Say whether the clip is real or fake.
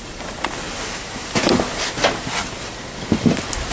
real